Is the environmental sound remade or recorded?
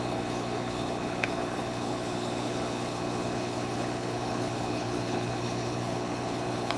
remade